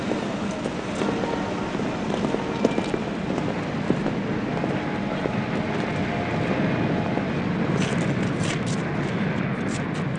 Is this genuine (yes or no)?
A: yes